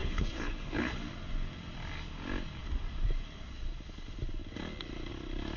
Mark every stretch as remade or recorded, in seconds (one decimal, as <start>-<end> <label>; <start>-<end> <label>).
0.0-1.0 remade; 1.0-5.6 recorded